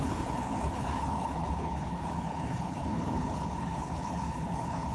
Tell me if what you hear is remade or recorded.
remade